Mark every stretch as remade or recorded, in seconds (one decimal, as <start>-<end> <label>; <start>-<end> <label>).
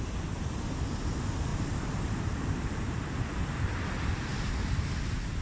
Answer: 0.0-1.5 recorded; 1.5-4.7 remade; 4.7-5.4 recorded